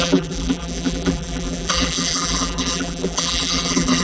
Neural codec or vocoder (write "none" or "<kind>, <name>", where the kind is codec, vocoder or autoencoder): vocoder, BigVGAN v2